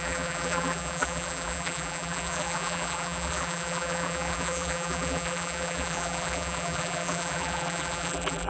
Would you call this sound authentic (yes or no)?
no